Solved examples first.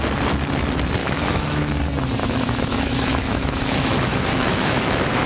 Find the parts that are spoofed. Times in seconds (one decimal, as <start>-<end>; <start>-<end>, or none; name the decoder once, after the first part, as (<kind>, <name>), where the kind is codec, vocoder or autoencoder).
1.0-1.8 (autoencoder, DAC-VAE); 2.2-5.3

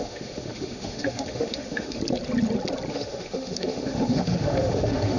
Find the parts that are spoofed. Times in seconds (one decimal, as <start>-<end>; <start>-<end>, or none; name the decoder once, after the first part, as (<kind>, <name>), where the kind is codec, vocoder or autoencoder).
0.0-2.0 (autoencoder, DAC-VAE); 2.9-5.2

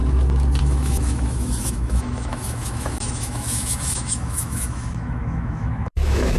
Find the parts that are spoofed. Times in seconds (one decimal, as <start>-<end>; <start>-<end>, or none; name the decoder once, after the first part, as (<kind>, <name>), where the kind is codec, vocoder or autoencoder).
0.6-6.4 (autoencoder, DAC-VAE)

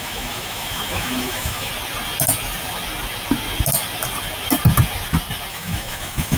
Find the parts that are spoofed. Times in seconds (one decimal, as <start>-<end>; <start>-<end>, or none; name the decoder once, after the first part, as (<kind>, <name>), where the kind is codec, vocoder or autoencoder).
0.0-1.7 (autoencoder, DAC-VAE); 5.5-6.4